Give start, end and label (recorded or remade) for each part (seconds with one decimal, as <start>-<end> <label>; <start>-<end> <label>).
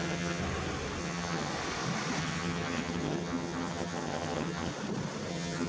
0.0-0.4 remade; 0.4-1.0 recorded; 1.0-1.5 remade; 1.5-2.2 recorded; 2.2-4.7 remade; 4.7-5.3 recorded; 5.3-5.7 remade